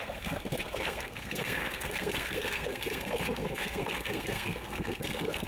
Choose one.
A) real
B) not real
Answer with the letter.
B